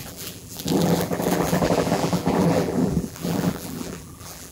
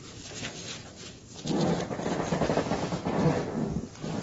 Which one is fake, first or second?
first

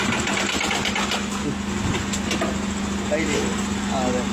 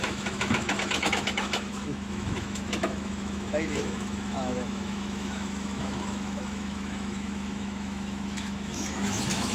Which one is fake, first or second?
second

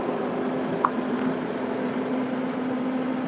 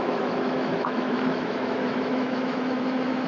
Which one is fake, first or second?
second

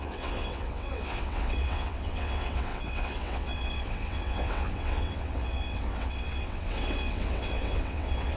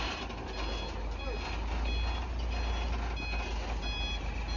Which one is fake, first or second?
first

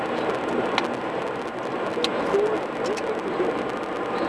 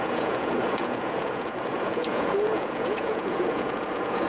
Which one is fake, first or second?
second